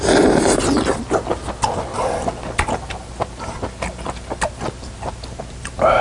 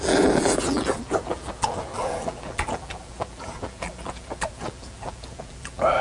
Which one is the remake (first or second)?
second